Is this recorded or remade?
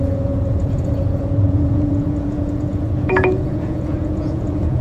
remade